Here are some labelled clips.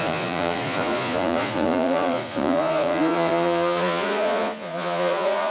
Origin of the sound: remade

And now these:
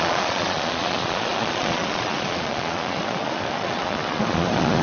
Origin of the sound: remade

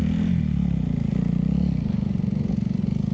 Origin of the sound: recorded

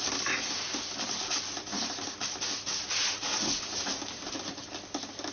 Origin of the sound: recorded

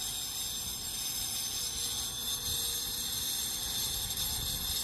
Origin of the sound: recorded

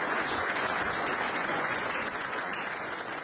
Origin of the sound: remade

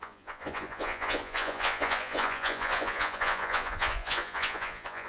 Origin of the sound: remade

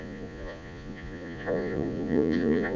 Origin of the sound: remade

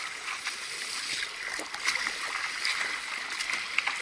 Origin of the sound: recorded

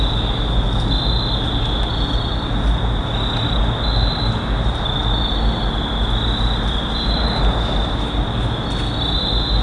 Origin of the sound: recorded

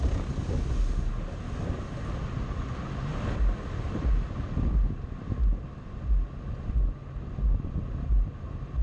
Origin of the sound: recorded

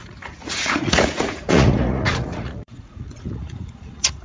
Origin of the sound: remade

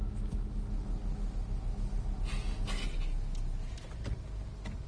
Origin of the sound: recorded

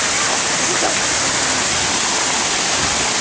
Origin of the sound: recorded